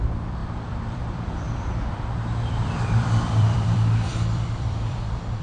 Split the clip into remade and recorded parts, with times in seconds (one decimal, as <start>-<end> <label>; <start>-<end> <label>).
0.0-5.4 remade